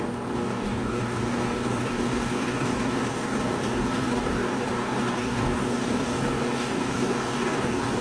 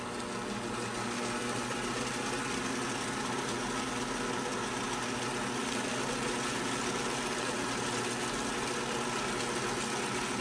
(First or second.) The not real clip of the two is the first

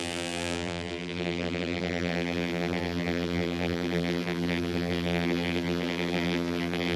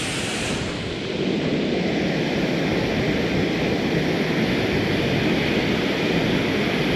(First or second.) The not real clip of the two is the first